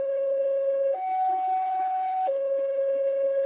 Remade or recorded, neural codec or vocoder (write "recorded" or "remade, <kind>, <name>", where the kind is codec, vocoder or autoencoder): remade, codec, HILCodec